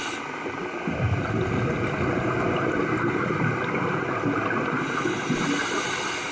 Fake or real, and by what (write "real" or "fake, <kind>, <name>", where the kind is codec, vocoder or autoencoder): real